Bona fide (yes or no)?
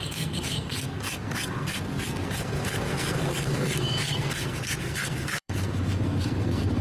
no